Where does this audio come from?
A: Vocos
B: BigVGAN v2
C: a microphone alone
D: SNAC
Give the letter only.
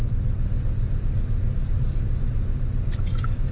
C